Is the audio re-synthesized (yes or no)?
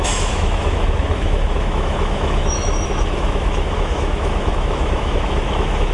yes